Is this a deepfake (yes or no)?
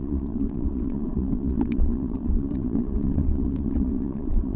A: yes